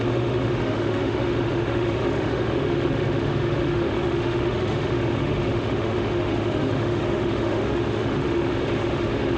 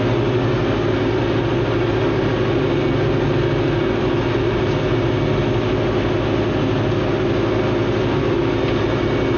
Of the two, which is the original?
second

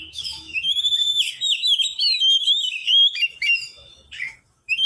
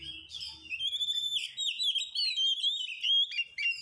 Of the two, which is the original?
second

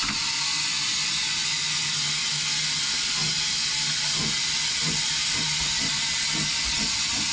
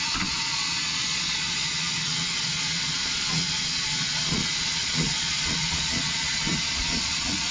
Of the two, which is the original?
first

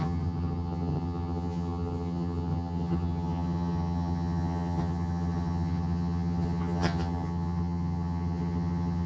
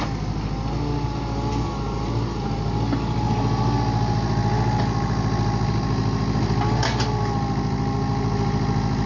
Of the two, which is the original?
second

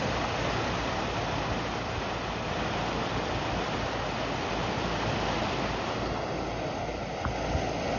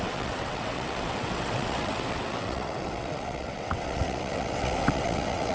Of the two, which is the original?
first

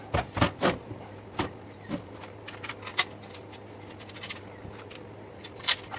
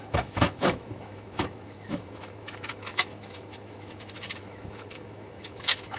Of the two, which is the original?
first